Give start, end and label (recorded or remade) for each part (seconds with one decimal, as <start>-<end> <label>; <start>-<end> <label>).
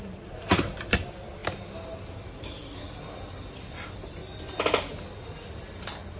0.0-1.4 remade; 1.4-2.0 recorded; 2.0-4.2 remade; 4.2-6.2 recorded